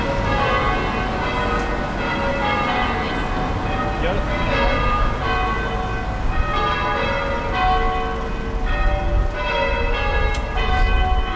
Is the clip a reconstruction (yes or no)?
no